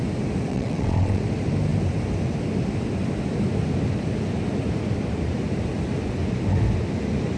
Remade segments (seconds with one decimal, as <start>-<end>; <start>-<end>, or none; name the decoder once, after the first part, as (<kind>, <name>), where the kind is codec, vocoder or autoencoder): 0.5-1.2 (vocoder, WaveNeXt)